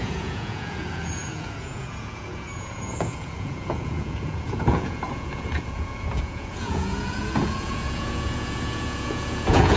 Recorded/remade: remade